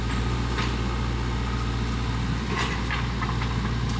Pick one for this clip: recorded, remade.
recorded